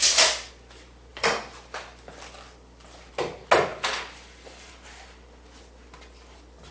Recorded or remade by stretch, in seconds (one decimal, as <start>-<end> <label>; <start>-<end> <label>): 0.0-0.5 remade; 0.5-1.1 recorded; 1.1-3.1 remade; 3.1-3.7 recorded; 3.7-4.7 remade; 4.7-6.7 recorded